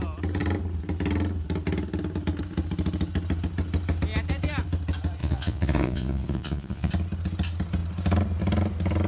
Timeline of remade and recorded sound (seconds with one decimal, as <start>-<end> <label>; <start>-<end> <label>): 0.0-5.2 recorded; 5.2-6.9 remade; 6.9-9.1 recorded